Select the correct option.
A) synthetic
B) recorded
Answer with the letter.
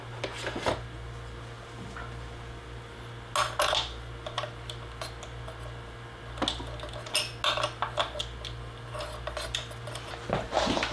B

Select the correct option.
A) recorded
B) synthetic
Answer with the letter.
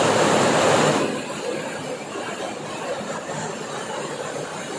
A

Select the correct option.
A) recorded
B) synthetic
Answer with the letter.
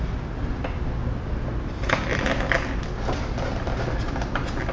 A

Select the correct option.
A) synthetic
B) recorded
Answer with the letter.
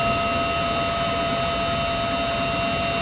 B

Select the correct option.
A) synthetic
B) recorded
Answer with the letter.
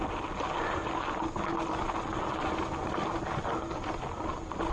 B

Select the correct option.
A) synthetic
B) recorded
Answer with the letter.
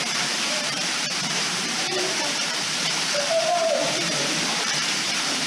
A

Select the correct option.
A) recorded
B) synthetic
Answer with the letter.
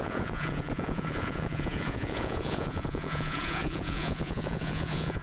B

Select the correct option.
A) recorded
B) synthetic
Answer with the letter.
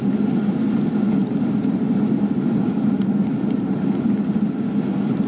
A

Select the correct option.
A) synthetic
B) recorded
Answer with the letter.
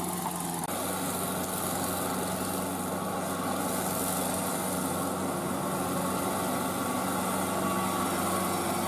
B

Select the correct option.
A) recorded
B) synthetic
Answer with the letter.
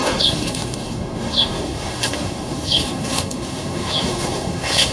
B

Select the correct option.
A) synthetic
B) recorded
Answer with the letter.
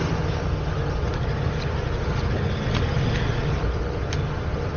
B